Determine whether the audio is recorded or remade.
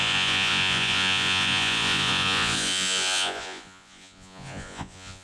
remade